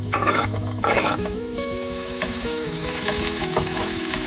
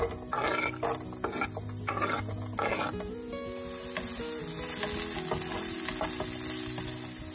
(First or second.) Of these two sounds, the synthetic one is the first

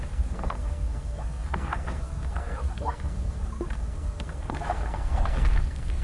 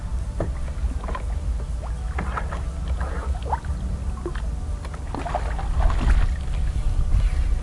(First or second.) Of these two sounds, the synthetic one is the first